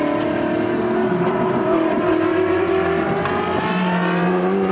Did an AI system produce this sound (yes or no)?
no